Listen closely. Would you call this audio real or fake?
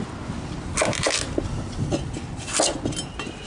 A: real